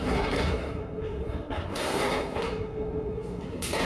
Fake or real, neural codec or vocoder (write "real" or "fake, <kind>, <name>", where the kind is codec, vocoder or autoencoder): fake, codec, SNAC